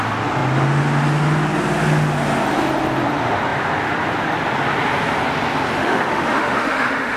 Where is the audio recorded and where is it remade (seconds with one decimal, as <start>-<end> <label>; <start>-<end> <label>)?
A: 0.0-5.8 recorded; 5.8-7.2 remade